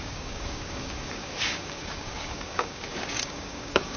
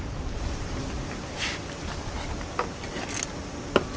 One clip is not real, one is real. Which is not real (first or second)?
first